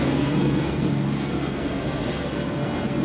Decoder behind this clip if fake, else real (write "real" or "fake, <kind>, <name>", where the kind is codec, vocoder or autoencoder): fake, codec, SNAC